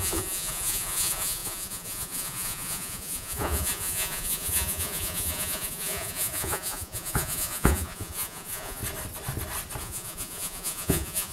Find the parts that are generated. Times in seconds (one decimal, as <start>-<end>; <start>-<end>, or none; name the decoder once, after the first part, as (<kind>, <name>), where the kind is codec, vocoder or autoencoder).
0.0-8.8 (vocoder, Vocos); 9.8-11.3

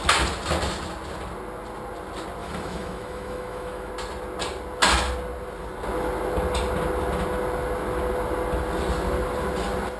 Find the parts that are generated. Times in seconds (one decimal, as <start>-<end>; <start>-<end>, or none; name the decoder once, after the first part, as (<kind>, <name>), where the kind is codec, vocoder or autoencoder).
2.4-3.9 (autoencoder, DAC-VAE)

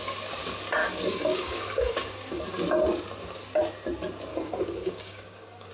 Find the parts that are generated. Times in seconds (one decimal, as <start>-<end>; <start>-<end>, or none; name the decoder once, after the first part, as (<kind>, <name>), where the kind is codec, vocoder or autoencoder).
0.8-2.4 (codec, DAC); 4.3-5.7

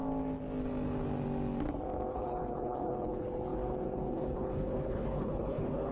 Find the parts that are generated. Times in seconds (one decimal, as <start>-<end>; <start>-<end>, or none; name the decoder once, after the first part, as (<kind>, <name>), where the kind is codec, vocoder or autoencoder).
2.1-5.9 (codec, HILCodec)

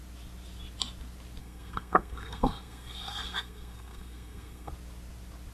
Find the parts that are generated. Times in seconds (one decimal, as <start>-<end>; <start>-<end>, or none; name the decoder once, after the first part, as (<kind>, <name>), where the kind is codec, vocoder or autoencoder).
1.4-4.7 (codec, SNAC)